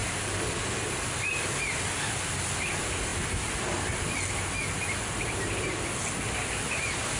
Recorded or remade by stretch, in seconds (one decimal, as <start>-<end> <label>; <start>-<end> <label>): 0.0-7.2 recorded